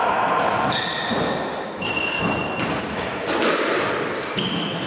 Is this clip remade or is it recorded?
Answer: recorded